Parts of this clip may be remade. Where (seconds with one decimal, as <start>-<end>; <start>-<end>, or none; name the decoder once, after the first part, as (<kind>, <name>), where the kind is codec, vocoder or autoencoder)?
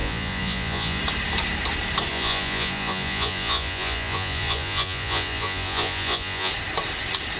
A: 0.0-1.0 (vocoder, Vocos); 2.1-6.5